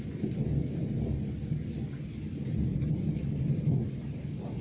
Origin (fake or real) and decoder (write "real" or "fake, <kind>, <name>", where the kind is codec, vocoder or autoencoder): real